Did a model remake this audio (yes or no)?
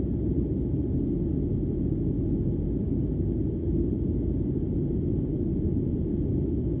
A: no